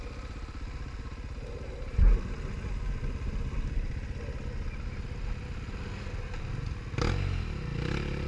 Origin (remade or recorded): recorded